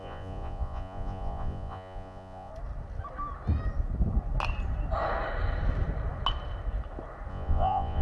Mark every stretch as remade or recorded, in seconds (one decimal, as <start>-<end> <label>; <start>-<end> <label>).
0.0-2.5 remade; 2.5-7.3 recorded; 7.3-8.0 remade